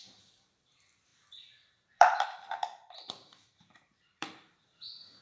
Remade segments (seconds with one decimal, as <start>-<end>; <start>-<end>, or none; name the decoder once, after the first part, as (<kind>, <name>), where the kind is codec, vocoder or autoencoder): 0.0-5.2 (vocoder, BigVGAN v2)